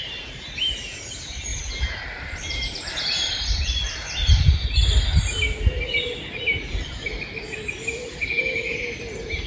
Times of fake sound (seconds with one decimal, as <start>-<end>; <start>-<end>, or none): 1.5-3.6